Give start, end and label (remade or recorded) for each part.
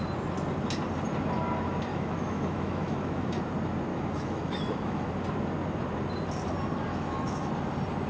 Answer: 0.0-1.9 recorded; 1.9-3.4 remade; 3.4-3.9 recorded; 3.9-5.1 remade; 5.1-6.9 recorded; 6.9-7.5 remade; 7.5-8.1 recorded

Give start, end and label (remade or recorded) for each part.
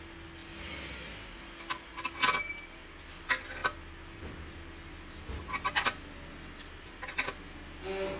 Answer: 0.0-8.2 recorded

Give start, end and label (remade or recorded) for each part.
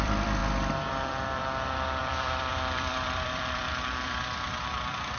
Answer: 0.0-0.4 remade; 0.4-0.9 recorded; 0.9-1.4 remade; 1.4-2.0 recorded; 2.0-5.2 remade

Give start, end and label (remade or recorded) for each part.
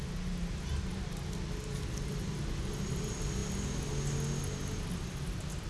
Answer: 0.0-5.7 recorded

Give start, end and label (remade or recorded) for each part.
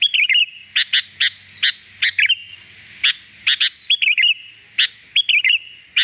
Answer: 0.0-6.0 recorded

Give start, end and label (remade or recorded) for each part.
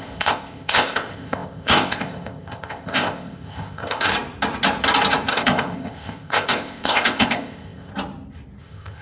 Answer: 0.0-4.1 remade; 4.1-5.3 recorded; 5.3-7.9 remade; 7.9-8.6 recorded; 8.6-9.0 remade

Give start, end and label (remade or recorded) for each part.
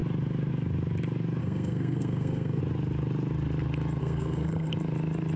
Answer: 0.0-1.4 recorded; 1.4-2.6 remade; 2.6-4.0 recorded; 4.0-4.7 remade; 4.7-5.4 recorded